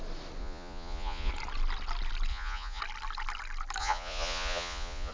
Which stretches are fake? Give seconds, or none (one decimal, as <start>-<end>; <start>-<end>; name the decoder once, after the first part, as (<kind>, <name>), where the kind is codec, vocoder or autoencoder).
0.4-1.3 (vocoder, Vocos); 2.3-2.8; 3.8-5.1

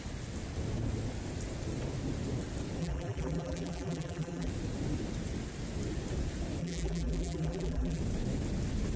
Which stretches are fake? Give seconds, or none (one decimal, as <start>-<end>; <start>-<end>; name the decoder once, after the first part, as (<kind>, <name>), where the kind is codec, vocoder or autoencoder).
2.8-4.5 (vocoder, BigVGAN v2); 6.6-8.0

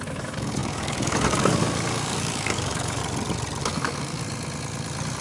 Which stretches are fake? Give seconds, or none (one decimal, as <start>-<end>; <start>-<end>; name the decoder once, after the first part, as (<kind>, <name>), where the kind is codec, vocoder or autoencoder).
0.0-3.0 (codec, DAC); 3.6-4.2

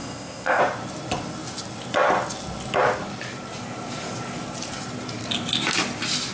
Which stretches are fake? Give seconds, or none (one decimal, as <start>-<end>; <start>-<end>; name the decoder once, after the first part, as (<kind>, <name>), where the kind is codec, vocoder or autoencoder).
0.0-0.6 (codec, ZipCodec)

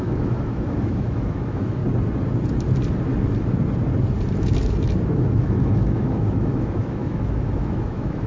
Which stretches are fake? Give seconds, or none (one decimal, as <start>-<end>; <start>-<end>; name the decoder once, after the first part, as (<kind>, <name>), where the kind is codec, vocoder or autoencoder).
0.0-1.8 (autoencoder, DAC-VAE); 5.1-8.3

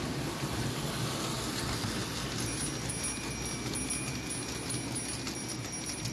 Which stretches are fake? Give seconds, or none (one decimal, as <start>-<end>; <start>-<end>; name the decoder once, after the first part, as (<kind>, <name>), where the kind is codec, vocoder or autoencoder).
none